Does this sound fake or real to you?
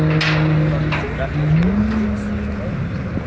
real